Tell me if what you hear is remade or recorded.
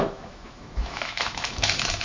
remade